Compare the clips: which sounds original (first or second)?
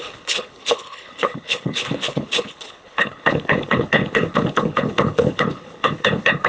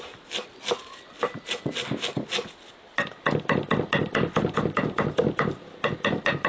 second